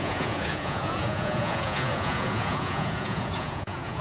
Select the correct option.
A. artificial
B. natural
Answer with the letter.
A